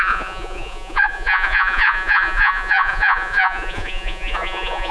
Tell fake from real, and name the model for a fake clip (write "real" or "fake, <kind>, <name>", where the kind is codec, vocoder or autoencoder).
fake, vocoder, Vocos